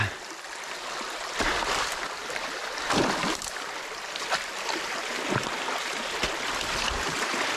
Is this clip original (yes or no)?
yes